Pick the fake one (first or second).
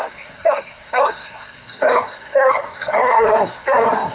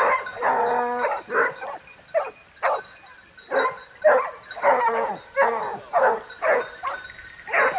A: first